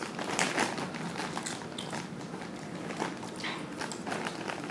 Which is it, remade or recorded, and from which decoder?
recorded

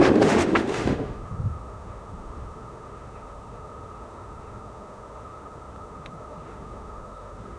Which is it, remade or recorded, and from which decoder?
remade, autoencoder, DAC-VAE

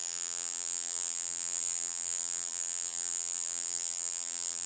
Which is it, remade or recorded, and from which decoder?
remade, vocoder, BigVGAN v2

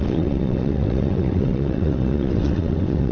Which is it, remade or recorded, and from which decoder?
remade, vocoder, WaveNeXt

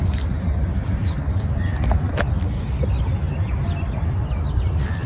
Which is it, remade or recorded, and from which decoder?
recorded